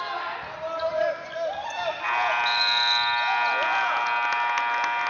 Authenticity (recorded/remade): recorded